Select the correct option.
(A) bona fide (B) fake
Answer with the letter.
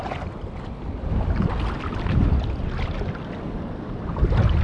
A